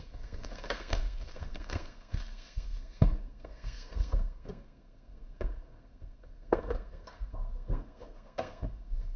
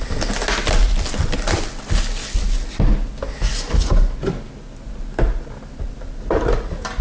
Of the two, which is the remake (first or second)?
first